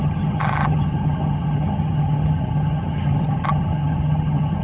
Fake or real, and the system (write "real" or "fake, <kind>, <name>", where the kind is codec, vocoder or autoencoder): fake, vocoder, HiFi-GAN